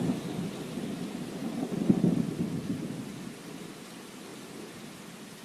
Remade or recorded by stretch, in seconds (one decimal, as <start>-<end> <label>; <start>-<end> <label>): 0.0-5.4 recorded